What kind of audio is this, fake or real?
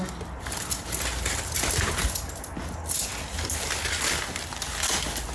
real